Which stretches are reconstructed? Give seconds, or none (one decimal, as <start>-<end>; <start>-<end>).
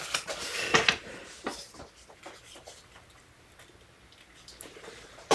none